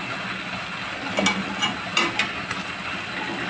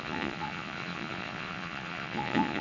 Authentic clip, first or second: first